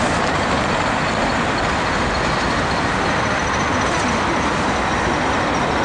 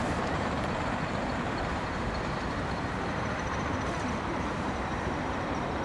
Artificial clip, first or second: second